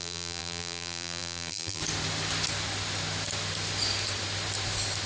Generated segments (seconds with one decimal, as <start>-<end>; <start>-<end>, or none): 0.0-1.8